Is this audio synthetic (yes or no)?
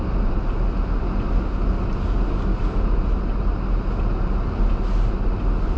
no